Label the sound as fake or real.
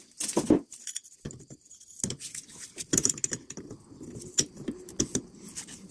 real